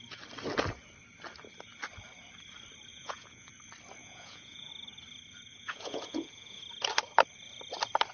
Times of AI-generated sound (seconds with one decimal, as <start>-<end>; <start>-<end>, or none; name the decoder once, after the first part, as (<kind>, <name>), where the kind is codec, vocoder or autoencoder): 2.9-3.5 (vocoder, Vocos); 4.0-4.7; 5.5-6.6